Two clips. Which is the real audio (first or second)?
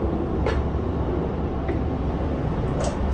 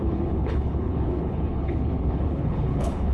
first